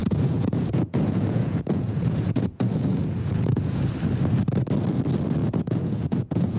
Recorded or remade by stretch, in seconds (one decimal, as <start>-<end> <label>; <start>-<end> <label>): 0.0-3.9 remade; 3.9-5.4 recorded; 5.4-6.6 remade